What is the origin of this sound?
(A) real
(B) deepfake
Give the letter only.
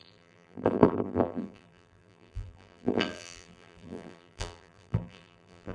B